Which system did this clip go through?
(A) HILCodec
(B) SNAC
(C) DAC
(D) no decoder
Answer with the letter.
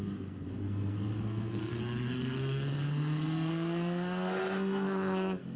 B